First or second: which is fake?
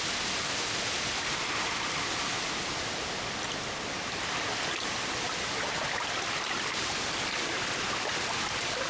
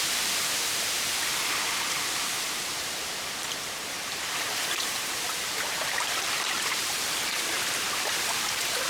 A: second